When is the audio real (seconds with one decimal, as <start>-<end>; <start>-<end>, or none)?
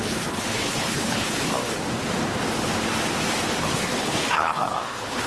1.4-3.6